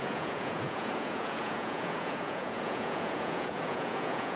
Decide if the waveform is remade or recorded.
remade